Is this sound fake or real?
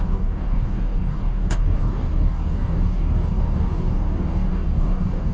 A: fake